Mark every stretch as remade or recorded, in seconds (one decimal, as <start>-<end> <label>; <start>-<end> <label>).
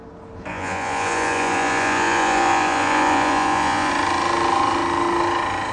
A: 0.0-0.5 recorded; 0.5-3.9 remade; 3.9-5.7 recorded